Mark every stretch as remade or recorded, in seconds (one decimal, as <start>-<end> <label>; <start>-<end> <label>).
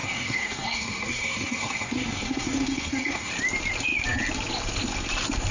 0.0-3.3 remade; 3.3-5.5 recorded